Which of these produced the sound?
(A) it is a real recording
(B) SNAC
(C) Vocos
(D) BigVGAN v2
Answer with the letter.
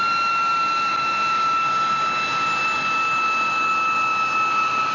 A